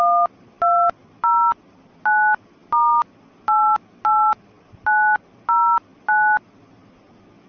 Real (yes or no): yes